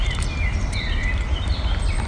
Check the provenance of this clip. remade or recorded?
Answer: remade